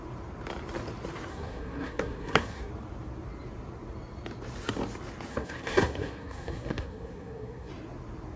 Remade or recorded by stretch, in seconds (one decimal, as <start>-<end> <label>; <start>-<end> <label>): 0.0-1.3 recorded; 1.3-2.7 remade; 2.7-5.3 recorded; 5.3-7.7 remade; 7.7-8.4 recorded